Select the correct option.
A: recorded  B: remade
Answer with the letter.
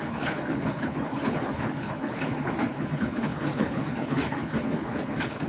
B